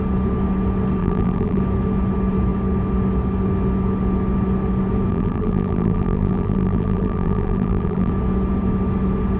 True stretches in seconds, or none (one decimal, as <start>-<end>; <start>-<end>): 0.0-1.0; 1.6-5.1; 8.1-9.4